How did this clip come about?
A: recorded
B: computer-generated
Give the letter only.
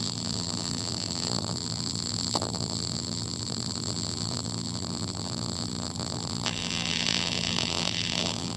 B